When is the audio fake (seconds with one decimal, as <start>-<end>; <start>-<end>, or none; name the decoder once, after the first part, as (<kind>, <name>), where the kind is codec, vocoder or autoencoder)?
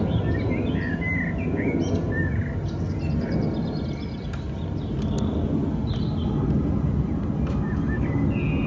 none